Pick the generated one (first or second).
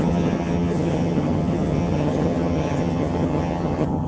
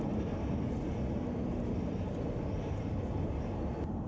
first